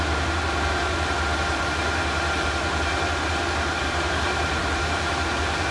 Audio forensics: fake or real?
fake